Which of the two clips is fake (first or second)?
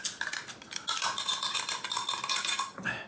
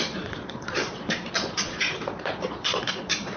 second